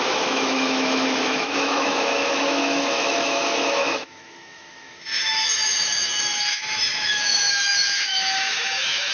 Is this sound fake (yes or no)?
yes